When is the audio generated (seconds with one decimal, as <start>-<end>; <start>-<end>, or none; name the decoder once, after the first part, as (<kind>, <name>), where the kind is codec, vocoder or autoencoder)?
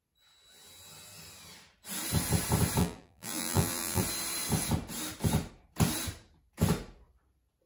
2.8-4.0 (vocoder, BigVGAN v2)